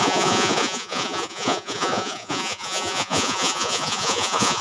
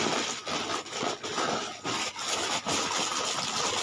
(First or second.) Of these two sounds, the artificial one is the first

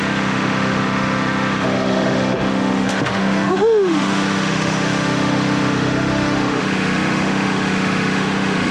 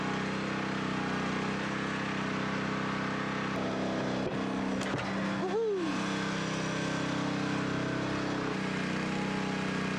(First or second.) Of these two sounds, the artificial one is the first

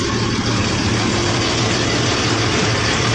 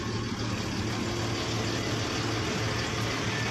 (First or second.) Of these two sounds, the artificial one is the first